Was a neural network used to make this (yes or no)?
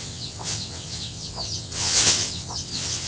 yes